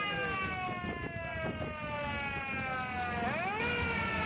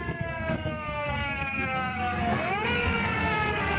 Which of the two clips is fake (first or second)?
second